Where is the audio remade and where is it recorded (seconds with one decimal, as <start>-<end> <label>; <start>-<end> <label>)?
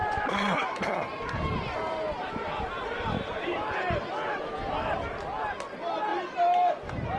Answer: 0.0-4.1 remade; 4.1-6.1 recorded; 6.1-6.7 remade; 6.7-7.2 recorded